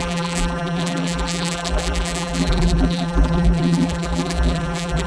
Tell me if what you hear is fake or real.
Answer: fake